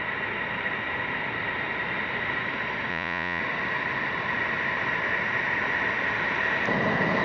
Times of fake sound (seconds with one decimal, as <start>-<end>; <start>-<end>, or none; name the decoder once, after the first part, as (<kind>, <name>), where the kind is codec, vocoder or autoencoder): 2.9-3.4 (vocoder, Vocos)